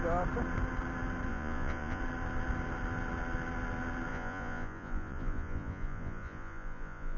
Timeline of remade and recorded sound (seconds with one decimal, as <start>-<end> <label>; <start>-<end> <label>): 0.0-1.3 recorded; 1.3-2.0 remade; 2.0-4.1 recorded; 4.1-7.2 remade